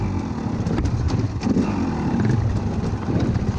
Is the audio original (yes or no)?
yes